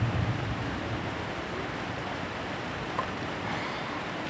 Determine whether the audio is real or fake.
real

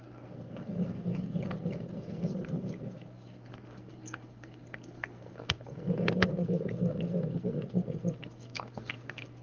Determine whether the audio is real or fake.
fake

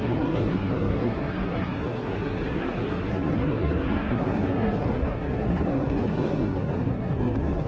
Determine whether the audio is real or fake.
fake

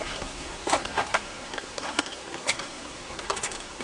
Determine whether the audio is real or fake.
fake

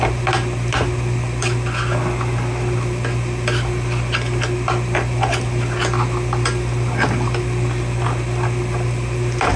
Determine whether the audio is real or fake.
real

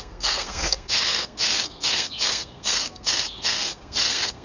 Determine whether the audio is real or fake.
fake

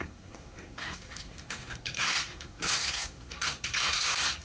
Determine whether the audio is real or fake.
fake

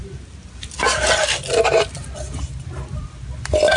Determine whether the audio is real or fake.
real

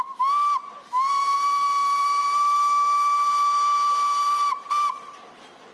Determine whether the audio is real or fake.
real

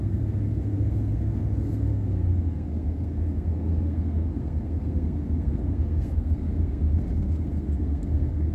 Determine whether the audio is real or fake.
fake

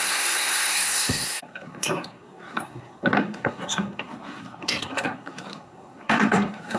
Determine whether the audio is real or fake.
fake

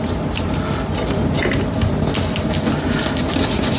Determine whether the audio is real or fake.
real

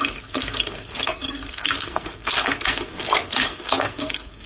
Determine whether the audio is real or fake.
fake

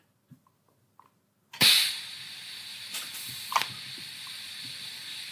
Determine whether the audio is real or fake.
real